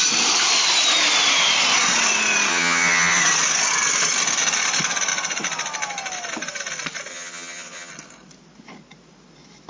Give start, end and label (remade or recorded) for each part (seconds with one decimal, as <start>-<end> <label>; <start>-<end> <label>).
0.0-2.5 recorded; 2.5-3.2 remade; 3.2-7.1 recorded; 7.1-7.9 remade; 7.9-9.7 recorded